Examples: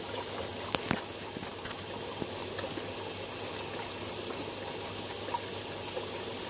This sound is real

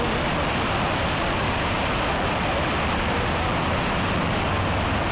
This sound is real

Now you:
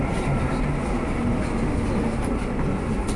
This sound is real